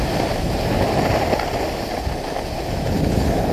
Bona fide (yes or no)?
yes